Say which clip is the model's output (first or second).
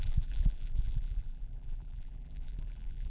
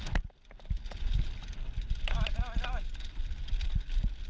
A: first